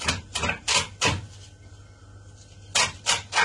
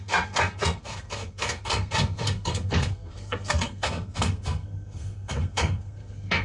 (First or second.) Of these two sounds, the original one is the first